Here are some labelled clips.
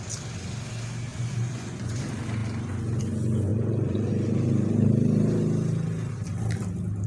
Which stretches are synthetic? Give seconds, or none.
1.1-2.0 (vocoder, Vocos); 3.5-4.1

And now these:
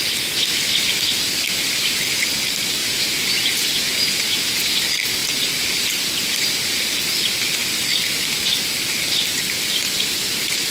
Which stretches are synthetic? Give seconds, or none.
2.8-4.7 (vocoder, Vocos)

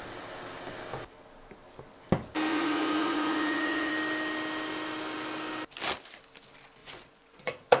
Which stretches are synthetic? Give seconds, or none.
2.5-3.9 (vocoder, Vocos); 6.8-7.8

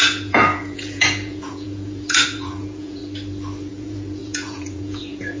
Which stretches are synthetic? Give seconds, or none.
0.0-3.0 (vocoder, Vocos); 3.7-5.4

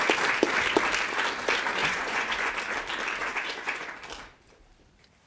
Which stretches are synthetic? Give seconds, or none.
1.8-2.5 (vocoder, Vocos); 3.2-3.9

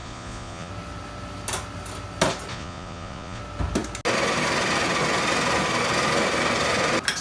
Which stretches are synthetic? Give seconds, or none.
0.0-0.7 (vocoder, Vocos); 2.5-3.4

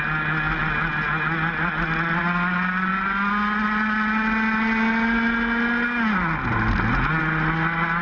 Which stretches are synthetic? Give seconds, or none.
none

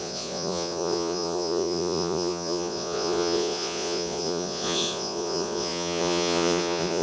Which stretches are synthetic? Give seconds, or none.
0.0-7.0 (vocoder, Vocos)